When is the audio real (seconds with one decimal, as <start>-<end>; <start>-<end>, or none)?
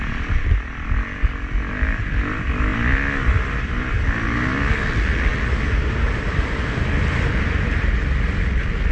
0.0-8.9